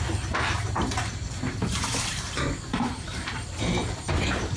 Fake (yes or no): yes